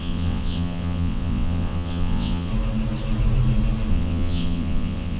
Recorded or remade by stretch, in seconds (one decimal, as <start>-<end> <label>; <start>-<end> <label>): 0.0-2.5 remade; 2.5-3.9 recorded; 3.9-5.2 remade